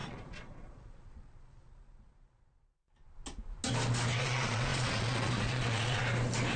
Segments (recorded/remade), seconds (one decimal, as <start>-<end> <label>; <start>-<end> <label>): 0.0-2.8 remade; 2.8-4.2 recorded; 4.2-6.0 remade; 6.0-6.6 recorded